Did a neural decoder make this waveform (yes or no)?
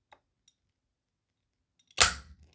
no